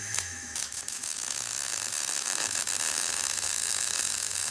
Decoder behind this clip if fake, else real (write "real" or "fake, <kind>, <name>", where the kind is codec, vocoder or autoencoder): fake, autoencoder, DAC-VAE